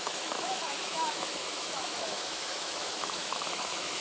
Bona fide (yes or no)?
no